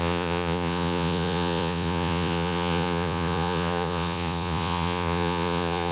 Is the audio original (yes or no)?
no